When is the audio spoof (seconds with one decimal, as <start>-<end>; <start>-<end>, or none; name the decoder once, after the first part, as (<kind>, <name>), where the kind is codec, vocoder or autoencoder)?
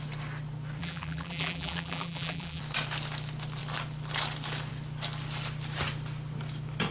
0.8-2.6 (vocoder, BigVGAN v2)